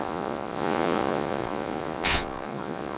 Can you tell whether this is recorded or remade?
remade